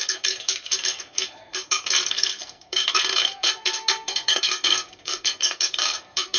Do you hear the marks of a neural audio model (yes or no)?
yes